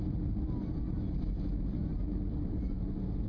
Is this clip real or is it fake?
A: real